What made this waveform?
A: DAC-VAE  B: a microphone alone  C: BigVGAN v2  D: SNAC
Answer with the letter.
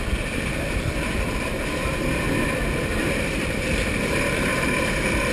C